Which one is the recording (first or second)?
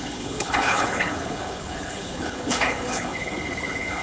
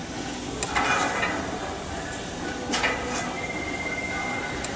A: second